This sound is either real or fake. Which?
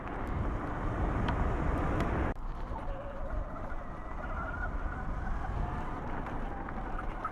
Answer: real